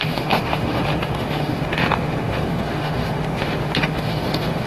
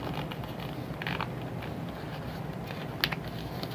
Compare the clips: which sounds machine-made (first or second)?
first